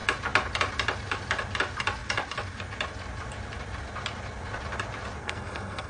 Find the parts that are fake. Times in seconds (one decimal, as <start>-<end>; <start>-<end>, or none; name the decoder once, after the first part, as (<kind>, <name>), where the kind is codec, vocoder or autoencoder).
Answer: 5.2-5.9 (codec, SNAC)